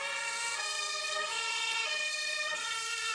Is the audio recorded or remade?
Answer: remade